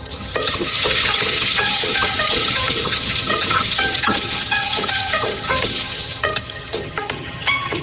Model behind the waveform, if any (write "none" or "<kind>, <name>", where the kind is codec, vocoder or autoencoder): vocoder, HiFi-GAN